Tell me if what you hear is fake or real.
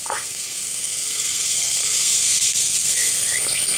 fake